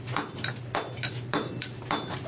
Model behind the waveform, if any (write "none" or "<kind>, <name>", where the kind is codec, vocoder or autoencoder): none